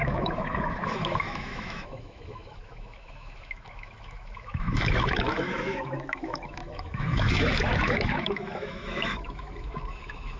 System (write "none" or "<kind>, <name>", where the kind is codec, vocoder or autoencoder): autoencoder, DAC-VAE